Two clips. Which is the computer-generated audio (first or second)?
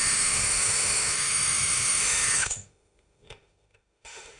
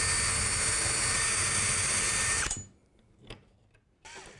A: first